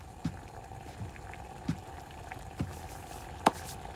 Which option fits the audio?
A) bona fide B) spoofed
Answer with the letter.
A